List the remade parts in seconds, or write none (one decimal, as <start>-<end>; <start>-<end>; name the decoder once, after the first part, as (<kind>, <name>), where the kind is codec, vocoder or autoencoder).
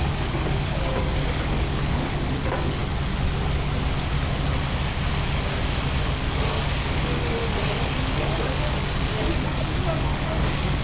0.0-2.8 (codec, DAC); 6.0-10.8